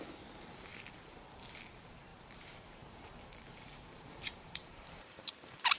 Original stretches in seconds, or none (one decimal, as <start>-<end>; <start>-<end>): 0.0-2.1